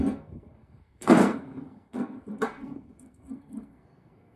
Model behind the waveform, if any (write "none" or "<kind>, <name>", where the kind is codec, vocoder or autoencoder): codec, SNAC